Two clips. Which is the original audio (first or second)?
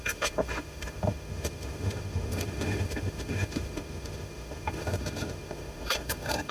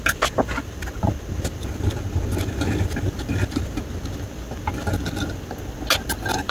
second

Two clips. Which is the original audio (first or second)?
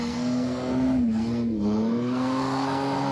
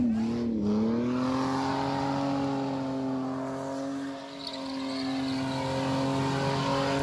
second